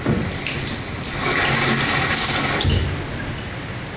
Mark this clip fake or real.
real